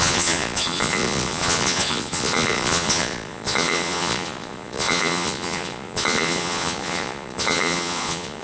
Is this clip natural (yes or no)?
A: no